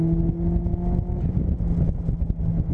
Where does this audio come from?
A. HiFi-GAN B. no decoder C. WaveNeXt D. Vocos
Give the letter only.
B